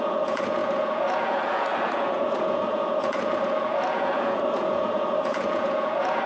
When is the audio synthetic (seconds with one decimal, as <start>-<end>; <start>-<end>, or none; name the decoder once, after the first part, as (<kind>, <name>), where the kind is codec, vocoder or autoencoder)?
0.0-6.3 (vocoder, Vocos)

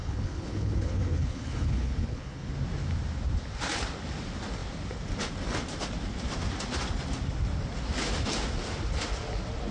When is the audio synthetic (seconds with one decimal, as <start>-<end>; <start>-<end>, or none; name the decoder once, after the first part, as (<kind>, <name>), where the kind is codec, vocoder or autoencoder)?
0.0-2.5 (codec, HILCodec)

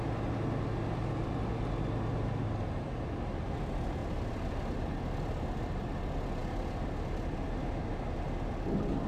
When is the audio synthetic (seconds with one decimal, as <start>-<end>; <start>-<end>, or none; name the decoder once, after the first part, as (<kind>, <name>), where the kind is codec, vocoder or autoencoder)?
4.0-4.6 (vocoder, BigVGAN v2)

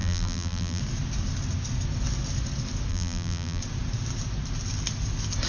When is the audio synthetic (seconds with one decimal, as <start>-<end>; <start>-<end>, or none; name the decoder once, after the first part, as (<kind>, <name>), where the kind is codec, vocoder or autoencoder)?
0.0-0.8 (vocoder, BigVGAN v2); 2.9-3.6

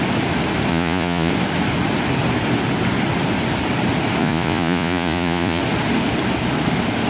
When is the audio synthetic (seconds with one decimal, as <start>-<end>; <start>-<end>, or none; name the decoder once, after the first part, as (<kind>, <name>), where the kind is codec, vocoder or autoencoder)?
0.7-1.3 (vocoder, Vocos); 4.2-5.6

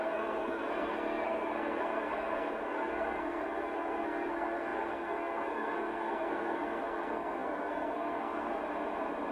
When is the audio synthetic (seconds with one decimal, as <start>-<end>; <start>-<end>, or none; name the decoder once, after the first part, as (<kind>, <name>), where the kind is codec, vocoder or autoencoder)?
0.0-8.6 (codec, SNAC)